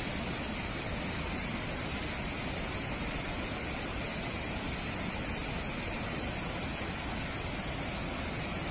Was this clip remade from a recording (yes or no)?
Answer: no